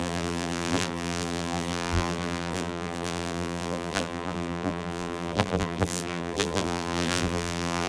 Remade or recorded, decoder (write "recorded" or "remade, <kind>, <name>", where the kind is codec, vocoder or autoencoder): remade, vocoder, BigVGAN v2